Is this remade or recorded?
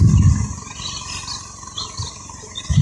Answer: recorded